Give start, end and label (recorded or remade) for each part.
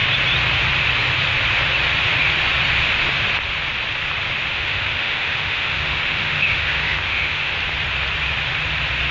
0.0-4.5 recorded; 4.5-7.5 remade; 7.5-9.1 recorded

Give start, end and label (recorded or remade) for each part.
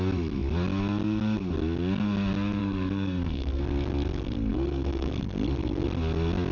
0.0-2.6 recorded; 2.6-3.6 remade; 3.6-4.5 recorded; 4.5-5.1 remade; 5.1-6.5 recorded